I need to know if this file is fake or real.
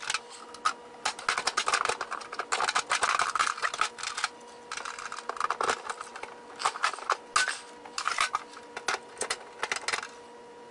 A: real